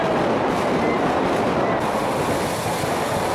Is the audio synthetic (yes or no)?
no